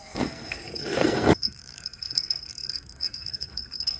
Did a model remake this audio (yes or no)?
yes